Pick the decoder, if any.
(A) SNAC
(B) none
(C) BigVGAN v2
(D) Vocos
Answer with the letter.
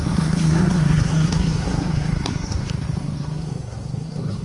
A